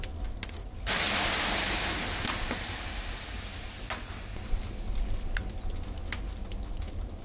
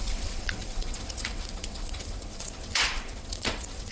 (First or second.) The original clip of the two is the first